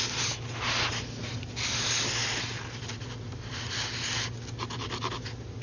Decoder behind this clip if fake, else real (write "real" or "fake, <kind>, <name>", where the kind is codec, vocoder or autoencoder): real